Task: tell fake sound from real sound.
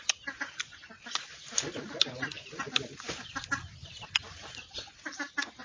real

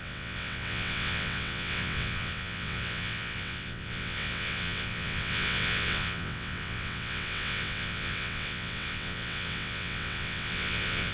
fake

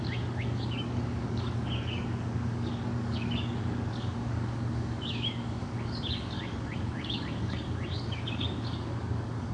fake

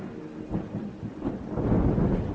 real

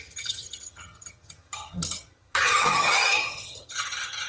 fake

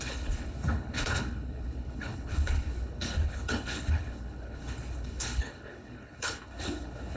fake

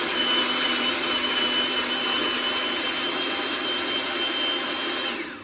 real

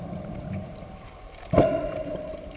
fake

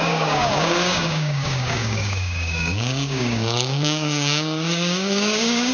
fake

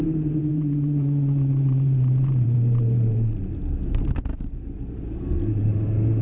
fake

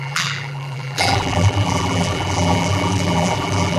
fake